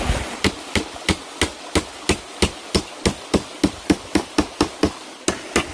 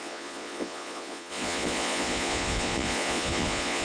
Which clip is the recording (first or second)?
first